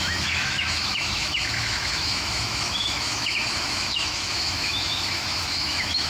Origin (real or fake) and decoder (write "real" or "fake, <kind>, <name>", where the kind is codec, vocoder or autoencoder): fake, autoencoder, DAC-VAE